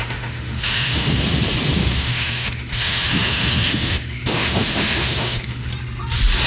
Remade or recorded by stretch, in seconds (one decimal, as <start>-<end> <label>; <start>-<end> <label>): 0.0-1.2 remade; 1.2-1.8 recorded; 1.8-5.7 remade; 5.7-6.5 recorded